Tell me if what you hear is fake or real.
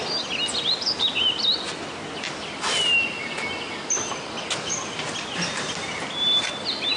real